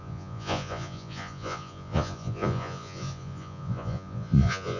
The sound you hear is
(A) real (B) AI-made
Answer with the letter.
B